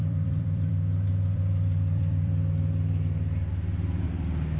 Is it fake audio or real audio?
fake